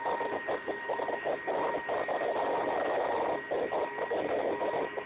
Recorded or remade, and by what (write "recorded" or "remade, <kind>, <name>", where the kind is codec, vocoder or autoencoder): recorded